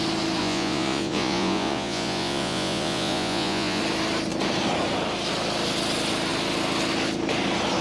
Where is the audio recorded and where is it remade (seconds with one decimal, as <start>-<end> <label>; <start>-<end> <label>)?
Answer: 0.0-0.4 recorded; 0.4-3.8 remade; 3.8-7.8 recorded